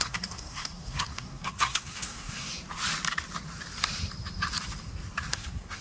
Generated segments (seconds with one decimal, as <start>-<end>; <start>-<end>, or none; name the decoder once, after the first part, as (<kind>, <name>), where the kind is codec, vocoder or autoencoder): 0.0-2.5 (codec, SNAC); 5.3-5.8